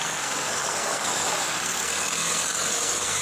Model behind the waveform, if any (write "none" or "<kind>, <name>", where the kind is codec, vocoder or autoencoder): codec, SNAC